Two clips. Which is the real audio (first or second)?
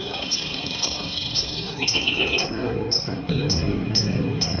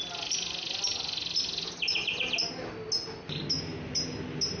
second